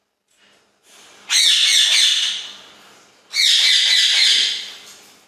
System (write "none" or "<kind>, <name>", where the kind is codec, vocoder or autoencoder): none